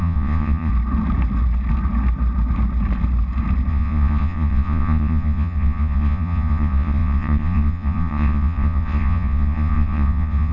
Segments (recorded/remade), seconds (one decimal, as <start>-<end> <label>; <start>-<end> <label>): 0.0-0.7 remade; 0.7-3.7 recorded; 3.7-10.5 remade